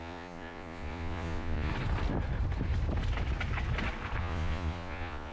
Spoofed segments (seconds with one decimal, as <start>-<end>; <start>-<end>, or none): 0.0-1.7; 4.2-5.3